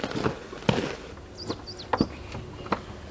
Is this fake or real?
real